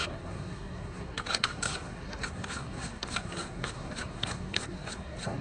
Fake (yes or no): yes